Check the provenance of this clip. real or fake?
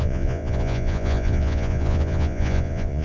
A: fake